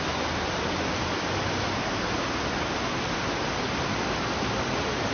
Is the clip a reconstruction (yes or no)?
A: no